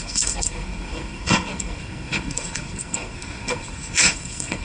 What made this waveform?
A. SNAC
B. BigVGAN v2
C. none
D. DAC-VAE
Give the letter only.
A